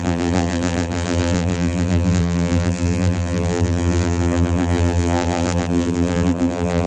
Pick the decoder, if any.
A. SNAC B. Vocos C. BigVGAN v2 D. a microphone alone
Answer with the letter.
C